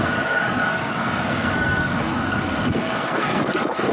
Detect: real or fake fake